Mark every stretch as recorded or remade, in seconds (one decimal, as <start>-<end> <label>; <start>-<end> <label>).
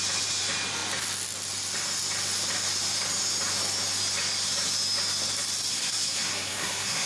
0.0-5.7 recorded; 5.7-7.1 remade